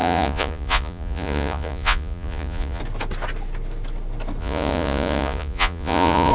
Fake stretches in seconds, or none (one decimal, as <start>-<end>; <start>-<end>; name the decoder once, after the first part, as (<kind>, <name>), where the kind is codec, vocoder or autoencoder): 0.0-2.8 (vocoder, Vocos); 4.4-6.3